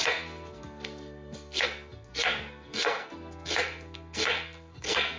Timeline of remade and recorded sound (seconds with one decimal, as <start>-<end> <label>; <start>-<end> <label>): 0.0-5.2 remade

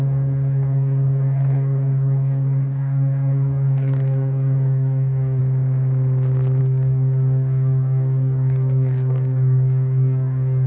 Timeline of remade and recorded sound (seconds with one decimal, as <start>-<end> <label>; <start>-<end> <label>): 0.0-5.4 remade; 5.4-6.6 recorded; 6.6-10.7 remade

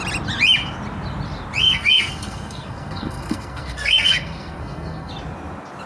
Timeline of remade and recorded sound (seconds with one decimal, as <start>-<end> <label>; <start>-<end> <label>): 0.0-1.6 recorded; 1.6-5.1 remade; 5.1-5.9 recorded

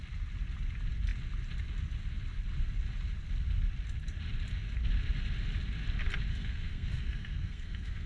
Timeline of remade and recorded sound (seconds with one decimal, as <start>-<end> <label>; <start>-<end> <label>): 0.0-6.3 recorded; 6.3-8.1 remade

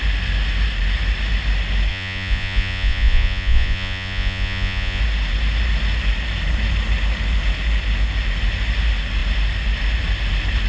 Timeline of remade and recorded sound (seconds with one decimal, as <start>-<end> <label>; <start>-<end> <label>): 0.0-1.9 recorded; 1.9-5.0 remade; 5.0-10.7 recorded